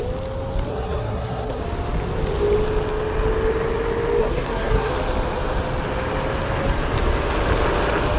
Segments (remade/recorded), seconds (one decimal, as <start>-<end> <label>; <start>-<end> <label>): 0.0-0.7 recorded; 0.7-1.6 remade; 1.6-4.2 recorded; 4.2-4.9 remade; 4.9-8.2 recorded